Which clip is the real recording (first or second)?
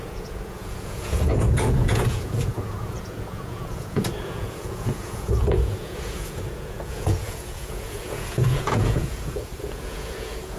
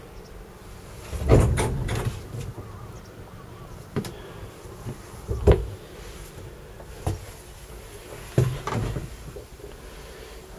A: second